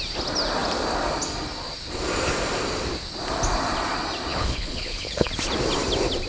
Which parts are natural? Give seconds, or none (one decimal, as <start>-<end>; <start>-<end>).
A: 0.0-4.3; 5.3-6.3